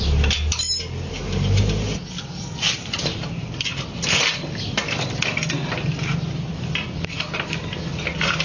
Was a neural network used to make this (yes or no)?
no